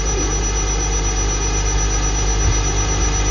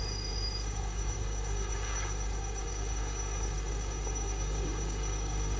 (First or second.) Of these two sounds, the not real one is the second